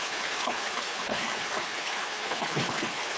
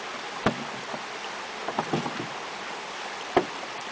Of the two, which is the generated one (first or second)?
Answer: first